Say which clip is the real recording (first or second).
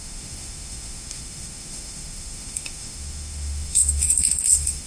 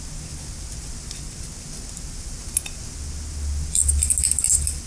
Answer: second